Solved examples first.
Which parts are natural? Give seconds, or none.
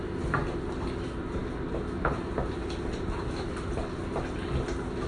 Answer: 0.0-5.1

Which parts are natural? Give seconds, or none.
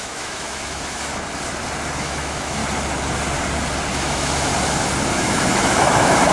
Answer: 1.1-2.0; 2.6-3.9; 4.5-5.1